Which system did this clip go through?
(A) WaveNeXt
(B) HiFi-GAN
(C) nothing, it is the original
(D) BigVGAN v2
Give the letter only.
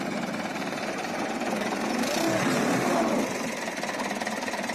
D